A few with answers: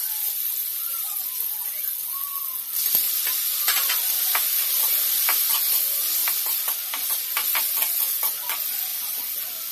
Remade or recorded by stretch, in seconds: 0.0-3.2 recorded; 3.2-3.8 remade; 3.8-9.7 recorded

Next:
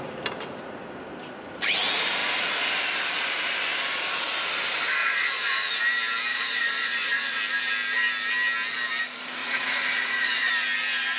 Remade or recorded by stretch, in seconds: 0.0-5.0 recorded; 5.0-5.8 remade; 5.8-6.3 recorded; 6.3-7.4 remade; 7.4-9.4 recorded; 9.4-10.5 remade; 10.5-11.2 recorded

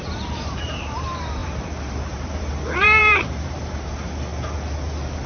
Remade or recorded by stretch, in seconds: 0.0-4.3 remade; 4.3-5.3 recorded

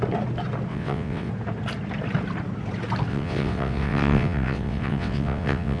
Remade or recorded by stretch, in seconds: 0.0-0.7 recorded; 0.7-1.3 remade; 1.3-3.1 recorded; 3.1-5.8 remade